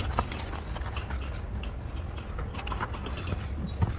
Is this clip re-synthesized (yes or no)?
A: no